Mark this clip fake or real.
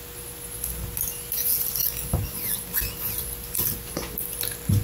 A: real